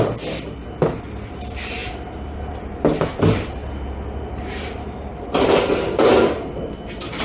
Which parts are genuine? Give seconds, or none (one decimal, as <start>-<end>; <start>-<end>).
0.0-3.6; 5.2-7.2